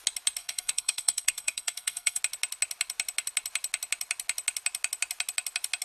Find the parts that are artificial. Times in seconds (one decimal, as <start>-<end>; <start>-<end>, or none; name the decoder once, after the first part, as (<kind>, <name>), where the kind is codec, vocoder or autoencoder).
0.4-2.2 (codec, SNAC)